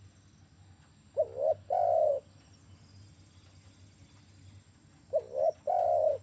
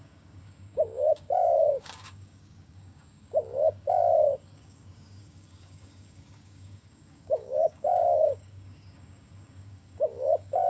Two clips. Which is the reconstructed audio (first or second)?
second